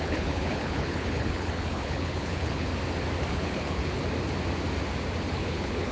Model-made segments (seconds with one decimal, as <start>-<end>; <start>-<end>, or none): 0.0-2.7; 3.3-4.0; 5.3-5.9